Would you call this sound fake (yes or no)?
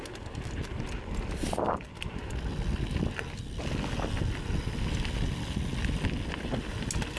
no